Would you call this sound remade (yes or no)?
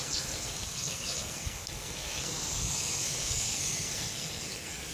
yes